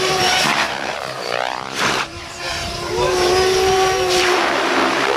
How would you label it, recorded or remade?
remade